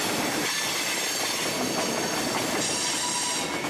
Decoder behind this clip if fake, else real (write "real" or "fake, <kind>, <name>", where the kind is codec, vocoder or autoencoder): real